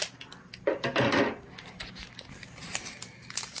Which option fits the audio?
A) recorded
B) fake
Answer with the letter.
A